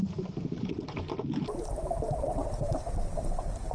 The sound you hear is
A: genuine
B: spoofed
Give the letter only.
B